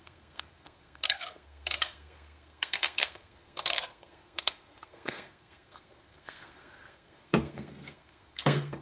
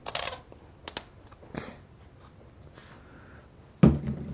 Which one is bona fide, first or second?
second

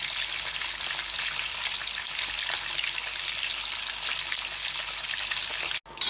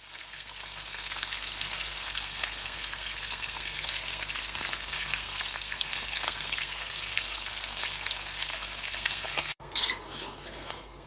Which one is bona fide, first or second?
first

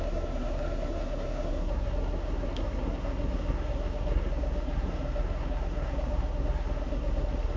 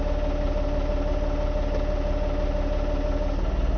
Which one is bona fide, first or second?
second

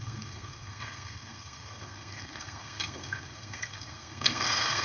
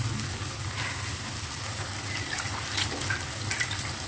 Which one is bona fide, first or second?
second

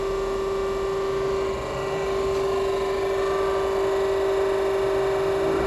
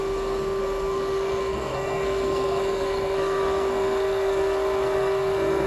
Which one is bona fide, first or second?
first